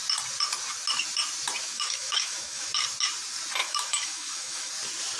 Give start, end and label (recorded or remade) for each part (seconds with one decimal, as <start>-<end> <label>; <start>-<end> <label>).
0.0-1.6 recorded; 1.6-2.7 remade; 2.7-3.6 recorded; 3.6-4.7 remade; 4.7-5.2 recorded